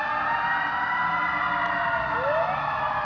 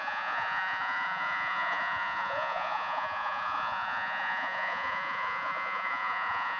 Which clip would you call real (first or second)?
first